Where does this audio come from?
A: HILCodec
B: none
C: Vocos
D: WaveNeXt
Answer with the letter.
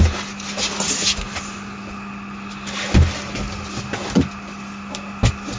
B